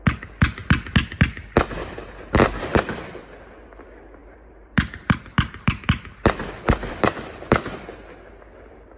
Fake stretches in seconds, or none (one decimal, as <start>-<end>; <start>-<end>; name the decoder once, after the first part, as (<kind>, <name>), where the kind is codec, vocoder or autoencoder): 1.8-3.2 (vocoder, BigVGAN v2); 4.2-7.8